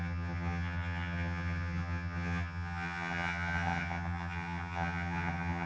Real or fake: fake